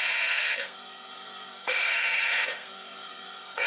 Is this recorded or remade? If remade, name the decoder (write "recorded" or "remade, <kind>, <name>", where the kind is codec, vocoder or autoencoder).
remade, codec, SNAC